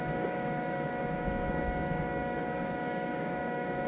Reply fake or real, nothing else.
fake